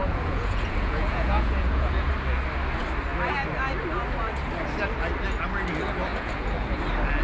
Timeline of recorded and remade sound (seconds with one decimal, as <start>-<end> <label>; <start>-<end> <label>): 0.0-2.1 remade; 2.1-6.1 recorded; 6.1-6.8 remade; 6.8-7.2 recorded